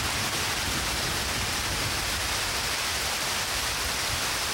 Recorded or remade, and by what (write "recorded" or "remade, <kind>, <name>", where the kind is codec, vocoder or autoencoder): recorded